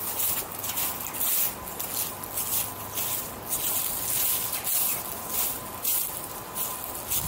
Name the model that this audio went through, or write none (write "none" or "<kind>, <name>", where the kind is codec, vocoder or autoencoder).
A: none